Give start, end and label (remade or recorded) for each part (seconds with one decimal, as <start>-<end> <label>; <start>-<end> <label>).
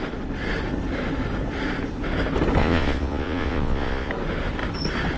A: 0.0-2.6 recorded; 2.6-4.1 remade; 4.1-5.2 recorded